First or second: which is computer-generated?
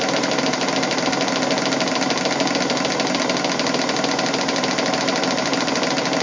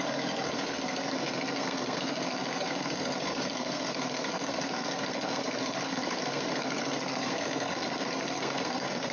second